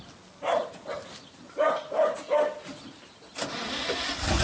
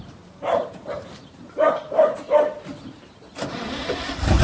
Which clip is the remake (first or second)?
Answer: second